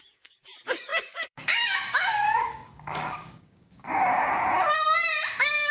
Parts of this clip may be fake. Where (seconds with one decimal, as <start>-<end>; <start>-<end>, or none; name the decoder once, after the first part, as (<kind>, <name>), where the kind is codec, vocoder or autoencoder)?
0.0-4.2 (codec, DAC); 5.3-5.7